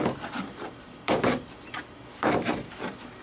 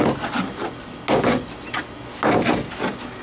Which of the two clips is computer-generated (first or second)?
first